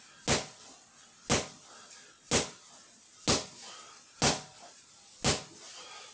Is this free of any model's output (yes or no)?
yes